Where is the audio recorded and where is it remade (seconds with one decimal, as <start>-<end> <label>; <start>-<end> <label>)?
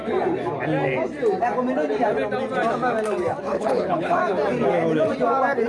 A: 0.0-3.4 recorded; 3.4-4.2 remade; 4.2-5.7 recorded